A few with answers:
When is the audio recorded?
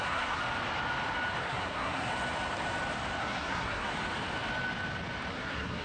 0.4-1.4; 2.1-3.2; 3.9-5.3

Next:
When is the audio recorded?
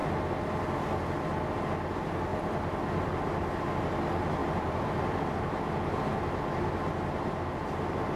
0.0-2.3; 3.8-4.4; 5.4-8.2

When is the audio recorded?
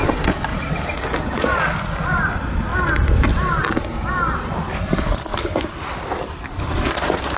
0.5-2.1; 2.7-3.7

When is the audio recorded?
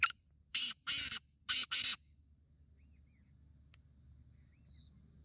0.0-5.2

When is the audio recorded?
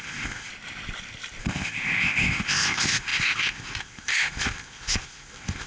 0.5-1.4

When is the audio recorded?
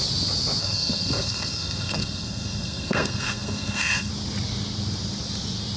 0.0-0.6; 4.1-5.8